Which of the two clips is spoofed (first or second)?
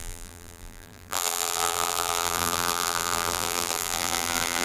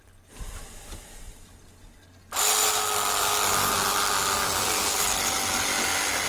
first